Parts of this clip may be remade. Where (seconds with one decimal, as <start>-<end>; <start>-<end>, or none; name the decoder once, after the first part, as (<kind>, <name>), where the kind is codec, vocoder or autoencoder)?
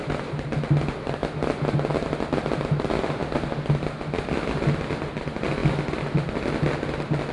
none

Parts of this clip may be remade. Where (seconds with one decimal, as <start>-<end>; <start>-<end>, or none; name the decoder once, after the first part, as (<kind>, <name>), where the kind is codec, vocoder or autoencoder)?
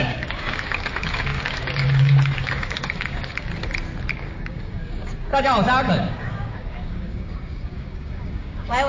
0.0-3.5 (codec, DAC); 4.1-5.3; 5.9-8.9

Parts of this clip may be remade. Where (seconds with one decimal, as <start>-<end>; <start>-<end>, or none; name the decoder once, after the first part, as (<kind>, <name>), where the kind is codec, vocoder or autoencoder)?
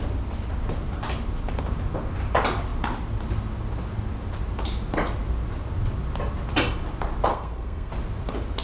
7.3-7.9 (codec, SNAC)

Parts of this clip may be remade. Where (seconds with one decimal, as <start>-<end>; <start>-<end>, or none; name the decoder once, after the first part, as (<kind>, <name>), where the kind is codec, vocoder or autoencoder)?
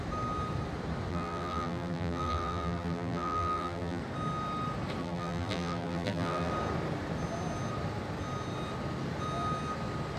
1.1-4.0 (vocoder, BigVGAN v2); 5.0-6.5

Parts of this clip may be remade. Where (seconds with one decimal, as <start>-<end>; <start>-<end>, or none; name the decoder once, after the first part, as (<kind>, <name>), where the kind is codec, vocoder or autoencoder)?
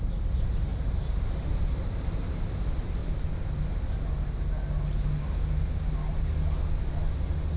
0.0-3.0 (vocoder, BigVGAN v2)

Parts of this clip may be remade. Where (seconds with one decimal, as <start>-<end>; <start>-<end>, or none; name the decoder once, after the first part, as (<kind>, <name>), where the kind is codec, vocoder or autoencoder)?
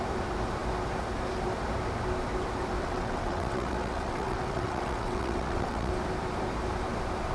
2.8-5.9 (vocoder, WaveNeXt)